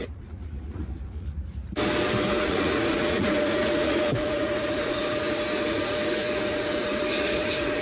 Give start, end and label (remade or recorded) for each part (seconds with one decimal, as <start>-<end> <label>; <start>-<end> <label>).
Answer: 0.0-1.6 remade; 1.6-2.3 recorded; 2.3-7.8 remade